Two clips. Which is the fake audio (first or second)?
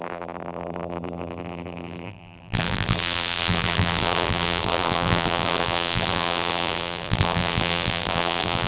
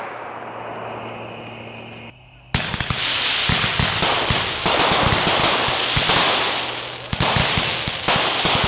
first